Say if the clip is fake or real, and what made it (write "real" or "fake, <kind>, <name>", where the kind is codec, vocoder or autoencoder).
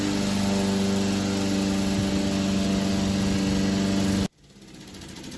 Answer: real